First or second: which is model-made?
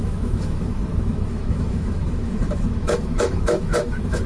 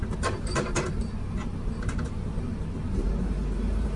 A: first